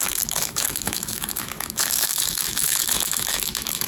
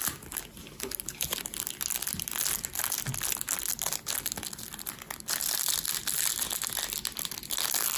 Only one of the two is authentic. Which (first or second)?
second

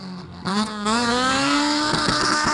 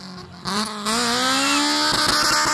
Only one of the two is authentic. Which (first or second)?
second